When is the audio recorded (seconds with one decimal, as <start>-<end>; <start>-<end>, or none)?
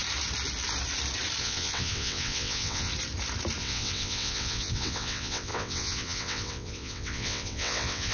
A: 0.0-1.4; 2.9-3.6